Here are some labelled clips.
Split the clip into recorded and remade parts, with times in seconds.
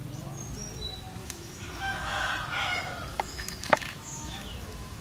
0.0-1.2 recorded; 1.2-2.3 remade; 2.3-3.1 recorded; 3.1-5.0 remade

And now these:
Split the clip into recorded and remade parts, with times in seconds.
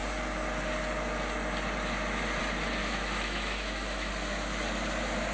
0.0-2.8 recorded; 2.8-4.1 remade; 4.1-5.3 recorded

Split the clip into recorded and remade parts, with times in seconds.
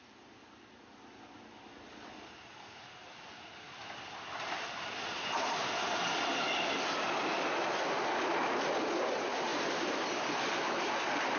0.0-11.4 recorded